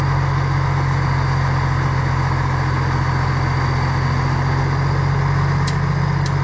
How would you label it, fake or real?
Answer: real